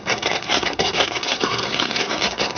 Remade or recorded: remade